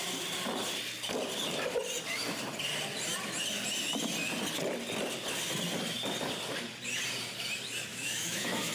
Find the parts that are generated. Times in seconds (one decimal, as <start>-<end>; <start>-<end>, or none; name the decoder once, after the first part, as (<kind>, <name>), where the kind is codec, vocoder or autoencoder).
7.9-8.7 (autoencoder, DAC-VAE)